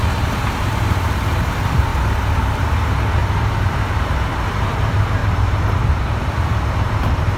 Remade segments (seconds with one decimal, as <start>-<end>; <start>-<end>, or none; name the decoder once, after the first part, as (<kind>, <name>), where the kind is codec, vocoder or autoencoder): 0.0-1.9 (vocoder, BigVGAN v2); 2.6-5.2; 6.3-7.4